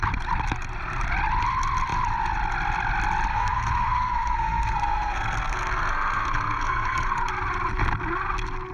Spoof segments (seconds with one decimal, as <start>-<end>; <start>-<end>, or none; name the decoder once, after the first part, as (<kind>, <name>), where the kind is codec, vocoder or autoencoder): 3.3-7.2 (codec, SNAC)